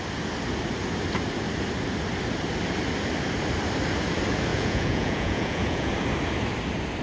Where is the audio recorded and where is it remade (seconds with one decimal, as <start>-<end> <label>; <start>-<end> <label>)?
0.0-4.5 recorded; 4.5-5.9 remade; 5.9-7.0 recorded